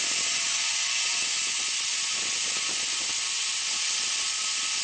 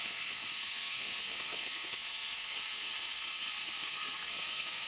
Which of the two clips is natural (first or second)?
first